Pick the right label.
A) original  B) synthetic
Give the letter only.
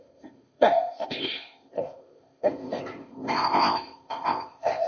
B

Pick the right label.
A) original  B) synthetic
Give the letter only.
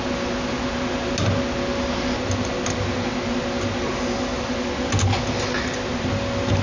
A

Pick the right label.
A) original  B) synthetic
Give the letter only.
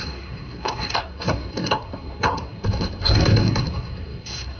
B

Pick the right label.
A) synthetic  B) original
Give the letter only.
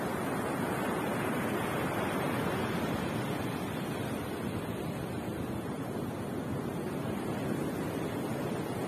B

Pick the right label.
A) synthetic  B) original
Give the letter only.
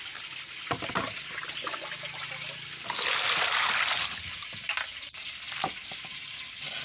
B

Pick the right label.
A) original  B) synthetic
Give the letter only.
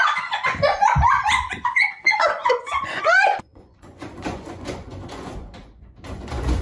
B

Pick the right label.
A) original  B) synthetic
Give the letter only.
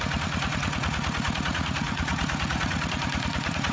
B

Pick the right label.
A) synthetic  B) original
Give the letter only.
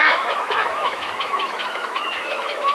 A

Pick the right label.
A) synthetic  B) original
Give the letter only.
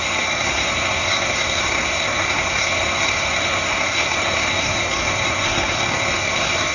A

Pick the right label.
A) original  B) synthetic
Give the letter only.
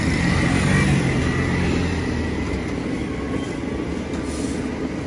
A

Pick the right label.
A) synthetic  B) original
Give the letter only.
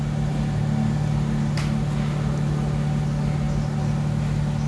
B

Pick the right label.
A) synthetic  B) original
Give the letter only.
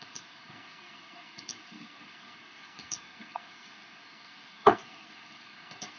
A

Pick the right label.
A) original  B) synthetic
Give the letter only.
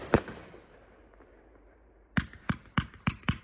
B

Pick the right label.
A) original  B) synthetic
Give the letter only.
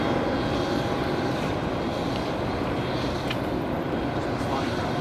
A